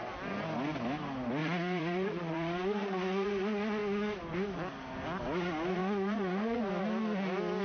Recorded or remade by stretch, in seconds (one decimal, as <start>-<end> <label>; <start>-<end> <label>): 0.0-1.4 recorded; 1.4-3.3 remade; 3.3-5.8 recorded; 5.8-6.6 remade; 6.6-7.6 recorded